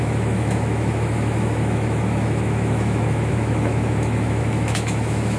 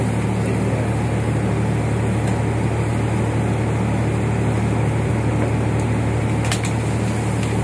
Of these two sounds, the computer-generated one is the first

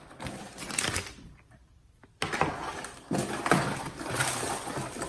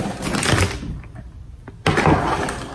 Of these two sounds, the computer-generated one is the first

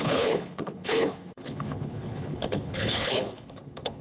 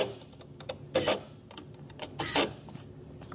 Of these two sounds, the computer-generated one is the first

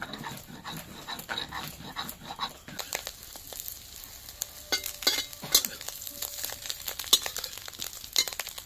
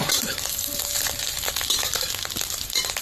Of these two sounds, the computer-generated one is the second